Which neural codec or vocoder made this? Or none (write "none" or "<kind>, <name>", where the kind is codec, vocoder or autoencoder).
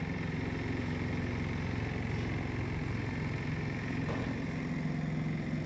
none